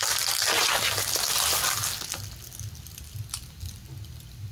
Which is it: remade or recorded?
recorded